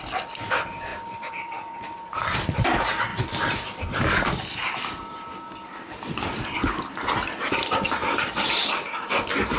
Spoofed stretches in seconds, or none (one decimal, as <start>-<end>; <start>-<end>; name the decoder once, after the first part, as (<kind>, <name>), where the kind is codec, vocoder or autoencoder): 0.9-2.4 (vocoder, BigVGAN v2); 3.1-6.7; 8.0-9.1